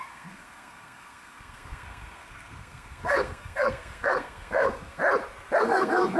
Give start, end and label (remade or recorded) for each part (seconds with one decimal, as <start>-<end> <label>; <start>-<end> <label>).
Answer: 0.0-5.0 remade; 5.0-5.6 recorded; 5.6-6.2 remade